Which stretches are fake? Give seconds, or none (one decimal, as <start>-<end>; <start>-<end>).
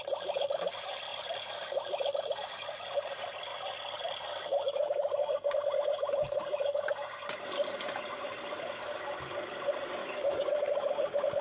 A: 10.0-10.9